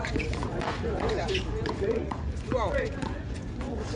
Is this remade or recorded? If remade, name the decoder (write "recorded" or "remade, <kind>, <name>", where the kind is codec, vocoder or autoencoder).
remade, vocoder, Vocos